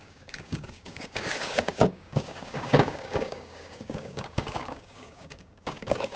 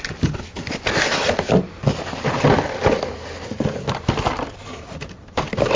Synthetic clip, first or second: first